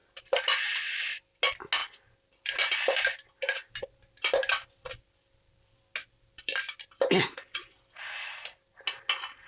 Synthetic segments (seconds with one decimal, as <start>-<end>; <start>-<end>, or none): none